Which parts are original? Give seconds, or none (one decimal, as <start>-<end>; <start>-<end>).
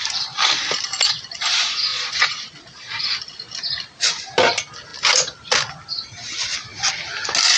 0.0-1.9; 3.0-7.6